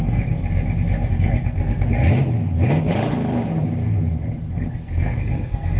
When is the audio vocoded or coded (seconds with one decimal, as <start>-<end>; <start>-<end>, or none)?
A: 0.0-0.4; 1.1-1.9; 4.5-5.8